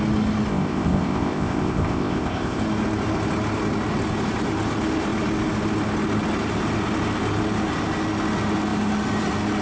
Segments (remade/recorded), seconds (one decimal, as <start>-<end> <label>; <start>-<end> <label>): 0.0-0.5 recorded; 0.5-2.6 remade; 2.6-9.6 recorded